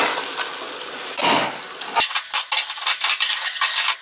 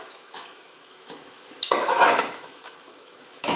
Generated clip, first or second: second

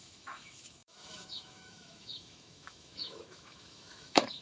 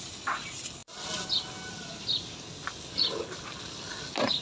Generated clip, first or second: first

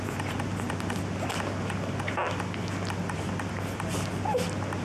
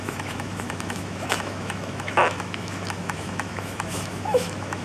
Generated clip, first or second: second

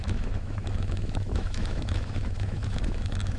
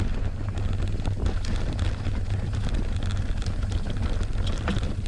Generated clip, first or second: first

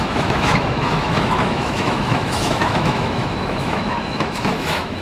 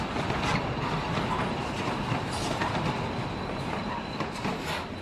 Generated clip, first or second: first